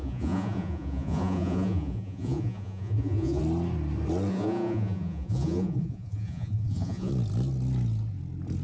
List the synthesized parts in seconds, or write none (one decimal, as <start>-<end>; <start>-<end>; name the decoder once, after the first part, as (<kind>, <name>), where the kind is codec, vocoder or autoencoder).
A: 0.0-3.4 (vocoder, Vocos); 4.3-7.1

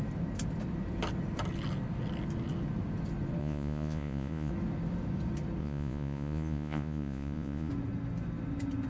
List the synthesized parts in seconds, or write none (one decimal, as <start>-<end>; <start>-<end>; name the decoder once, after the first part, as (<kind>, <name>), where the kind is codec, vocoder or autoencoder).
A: 3.4-4.5 (vocoder, Vocos); 5.6-7.7

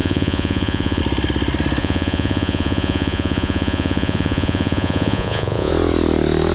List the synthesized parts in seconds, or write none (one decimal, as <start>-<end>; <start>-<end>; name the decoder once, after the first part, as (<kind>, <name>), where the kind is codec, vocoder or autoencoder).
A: 0.0-1.0 (vocoder, Vocos); 1.8-5.7